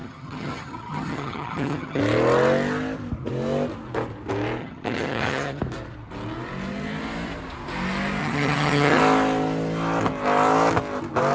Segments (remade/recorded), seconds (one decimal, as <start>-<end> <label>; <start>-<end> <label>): 0.0-2.0 remade; 2.0-4.6 recorded; 4.6-5.6 remade; 5.6-8.2 recorded; 8.2-9.0 remade; 9.0-11.3 recorded